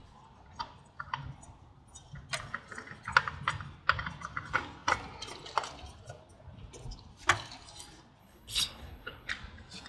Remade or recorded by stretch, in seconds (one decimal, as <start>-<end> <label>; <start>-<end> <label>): 0.0-8.2 recorded; 8.2-9.3 remade; 9.3-9.9 recorded